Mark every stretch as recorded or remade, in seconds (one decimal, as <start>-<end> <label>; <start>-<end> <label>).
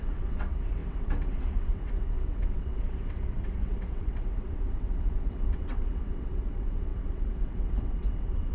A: 0.0-8.5 remade